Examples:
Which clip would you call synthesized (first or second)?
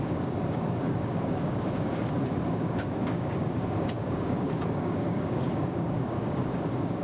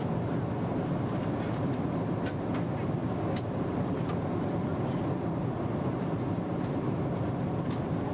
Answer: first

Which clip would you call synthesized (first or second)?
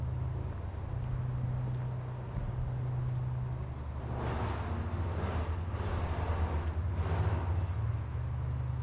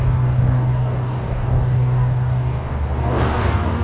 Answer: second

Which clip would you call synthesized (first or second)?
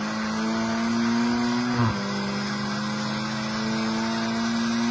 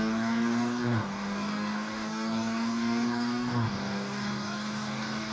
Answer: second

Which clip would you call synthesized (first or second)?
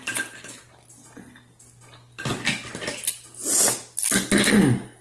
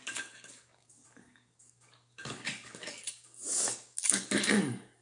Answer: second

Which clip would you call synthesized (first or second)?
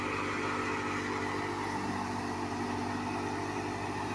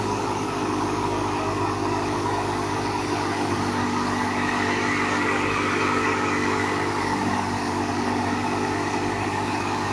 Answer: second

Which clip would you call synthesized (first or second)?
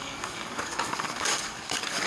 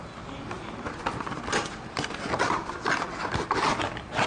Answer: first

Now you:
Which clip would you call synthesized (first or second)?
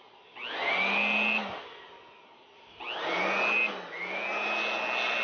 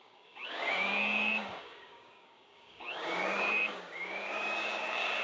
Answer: second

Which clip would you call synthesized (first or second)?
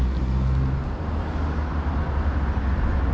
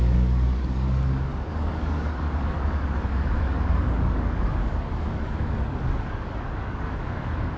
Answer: second